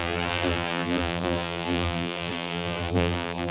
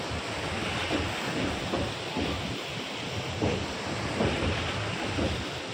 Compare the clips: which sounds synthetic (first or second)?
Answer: first